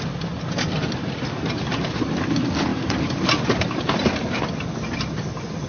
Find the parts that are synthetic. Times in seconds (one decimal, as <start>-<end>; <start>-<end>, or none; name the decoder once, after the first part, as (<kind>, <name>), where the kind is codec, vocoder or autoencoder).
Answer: 1.0-2.0 (vocoder, BigVGAN v2); 2.7-4.4